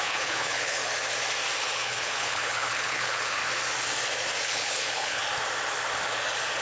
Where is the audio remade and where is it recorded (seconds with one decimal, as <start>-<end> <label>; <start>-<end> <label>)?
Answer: 0.0-0.8 remade; 0.8-1.6 recorded; 1.6-3.4 remade; 3.4-4.4 recorded; 4.4-5.2 remade; 5.2-6.6 recorded